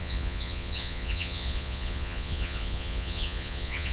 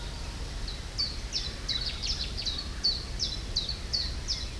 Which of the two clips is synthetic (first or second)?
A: first